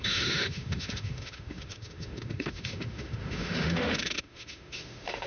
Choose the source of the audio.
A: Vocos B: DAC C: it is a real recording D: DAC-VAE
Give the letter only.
D